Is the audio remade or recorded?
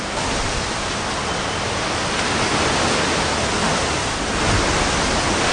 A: recorded